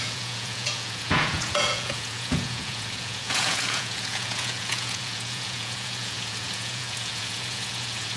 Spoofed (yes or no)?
yes